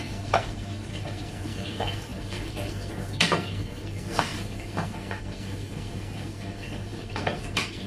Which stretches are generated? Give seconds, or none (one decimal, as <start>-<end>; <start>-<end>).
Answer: 0.0-7.9